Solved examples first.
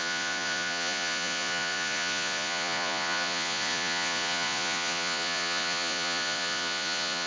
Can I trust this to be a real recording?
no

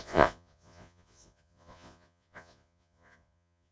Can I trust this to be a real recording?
no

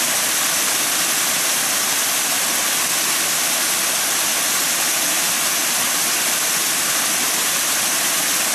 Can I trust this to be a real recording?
yes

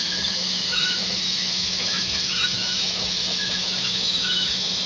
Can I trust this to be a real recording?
no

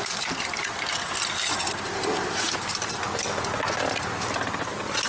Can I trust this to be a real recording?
yes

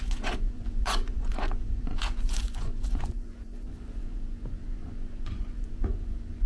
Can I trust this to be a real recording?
no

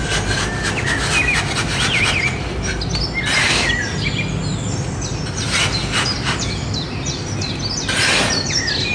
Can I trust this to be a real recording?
yes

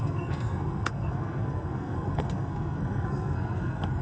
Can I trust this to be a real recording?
no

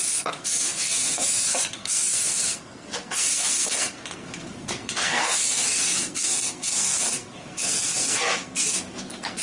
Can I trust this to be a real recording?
no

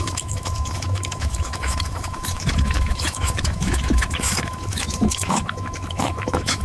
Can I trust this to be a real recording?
no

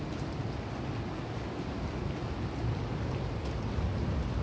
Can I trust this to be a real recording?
yes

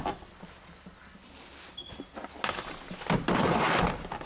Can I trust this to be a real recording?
yes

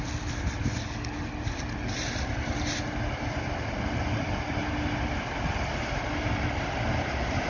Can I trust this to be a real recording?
yes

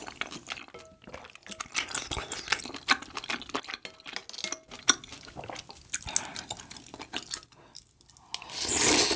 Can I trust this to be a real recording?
yes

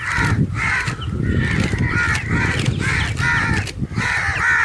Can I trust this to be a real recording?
yes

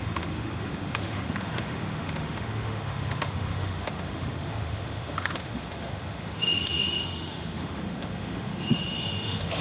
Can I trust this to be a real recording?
no